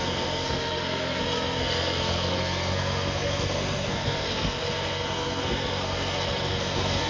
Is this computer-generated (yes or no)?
yes